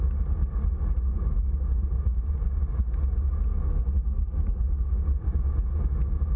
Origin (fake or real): real